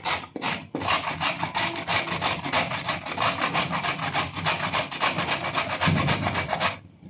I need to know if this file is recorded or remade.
recorded